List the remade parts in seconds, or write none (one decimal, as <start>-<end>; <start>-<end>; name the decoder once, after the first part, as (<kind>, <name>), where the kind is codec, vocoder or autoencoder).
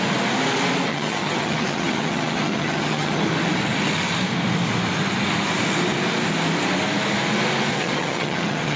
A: 0.9-3.2 (vocoder, HiFi-GAN); 7.7-8.8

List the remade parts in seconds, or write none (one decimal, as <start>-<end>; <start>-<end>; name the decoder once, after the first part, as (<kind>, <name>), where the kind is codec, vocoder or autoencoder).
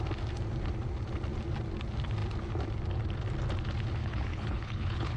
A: 4.0-5.2 (codec, HILCodec)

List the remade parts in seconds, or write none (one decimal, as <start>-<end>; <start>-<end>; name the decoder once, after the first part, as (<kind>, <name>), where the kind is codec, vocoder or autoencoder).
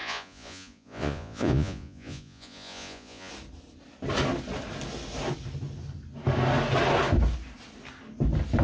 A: 0.0-3.3 (vocoder, Vocos)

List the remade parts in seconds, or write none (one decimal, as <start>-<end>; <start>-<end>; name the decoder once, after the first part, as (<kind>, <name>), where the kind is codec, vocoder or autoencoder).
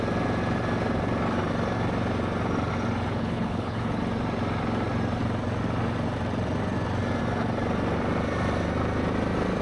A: 3.1-4.0 (codec, HILCodec)